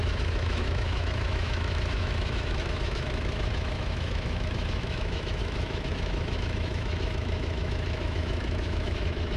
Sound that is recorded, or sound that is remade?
remade